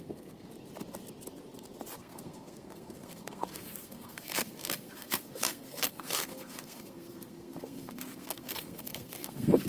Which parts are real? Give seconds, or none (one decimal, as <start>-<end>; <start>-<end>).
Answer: 0.5-2.0